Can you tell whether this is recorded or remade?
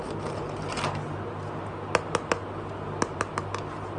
recorded